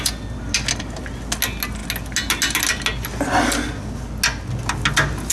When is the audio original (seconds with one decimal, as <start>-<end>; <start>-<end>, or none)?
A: 0.0-5.3